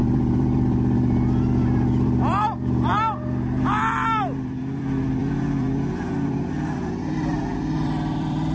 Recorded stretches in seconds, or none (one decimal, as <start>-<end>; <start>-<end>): none